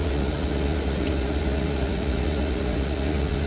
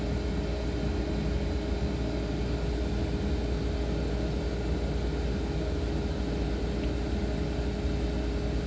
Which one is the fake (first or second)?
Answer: first